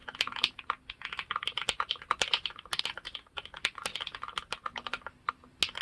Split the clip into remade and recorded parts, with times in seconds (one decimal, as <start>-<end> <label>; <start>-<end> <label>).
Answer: 0.0-5.8 recorded